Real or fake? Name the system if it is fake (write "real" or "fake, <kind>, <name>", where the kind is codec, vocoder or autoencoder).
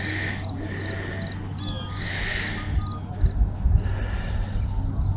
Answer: real